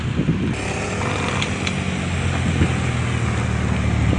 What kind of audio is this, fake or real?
real